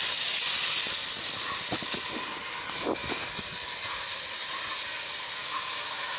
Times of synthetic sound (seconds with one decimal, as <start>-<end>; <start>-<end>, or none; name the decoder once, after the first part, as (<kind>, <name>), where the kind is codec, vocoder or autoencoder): 5.4-6.2 (autoencoder, DAC-VAE)